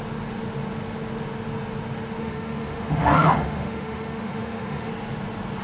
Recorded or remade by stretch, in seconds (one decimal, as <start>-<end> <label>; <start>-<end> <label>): 0.0-2.2 recorded; 2.2-4.9 remade; 4.9-5.6 recorded